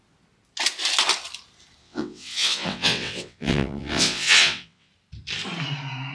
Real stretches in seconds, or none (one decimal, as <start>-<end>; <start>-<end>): 0.0-1.8; 4.9-6.1